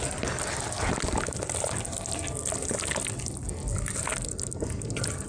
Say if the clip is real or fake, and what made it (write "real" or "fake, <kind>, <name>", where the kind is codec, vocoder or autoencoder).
real